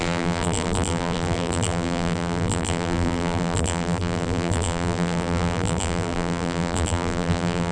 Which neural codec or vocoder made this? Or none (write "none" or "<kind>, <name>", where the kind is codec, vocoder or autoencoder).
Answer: vocoder, BigVGAN v2